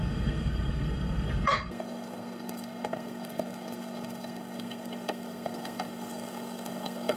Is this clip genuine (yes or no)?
no